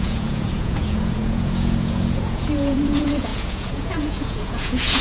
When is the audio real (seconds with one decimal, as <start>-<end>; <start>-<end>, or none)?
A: none